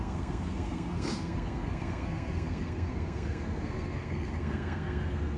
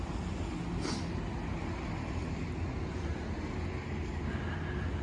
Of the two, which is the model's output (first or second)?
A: first